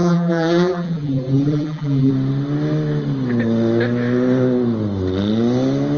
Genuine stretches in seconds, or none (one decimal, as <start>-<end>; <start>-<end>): 2.1-6.0